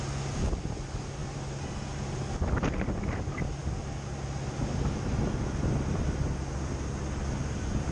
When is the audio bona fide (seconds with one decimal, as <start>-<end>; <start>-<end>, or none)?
0.0-7.9